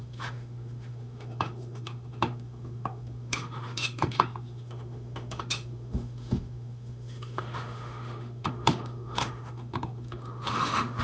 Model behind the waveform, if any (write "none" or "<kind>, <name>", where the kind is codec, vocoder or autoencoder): autoencoder, DAC-VAE